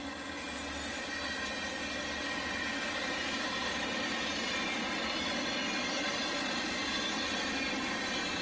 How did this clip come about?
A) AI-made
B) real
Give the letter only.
B